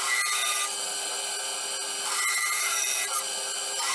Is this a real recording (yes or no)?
yes